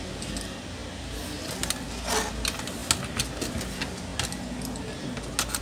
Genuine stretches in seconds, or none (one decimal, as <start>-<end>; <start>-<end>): 0.0-5.6